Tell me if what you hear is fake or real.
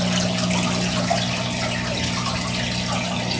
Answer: real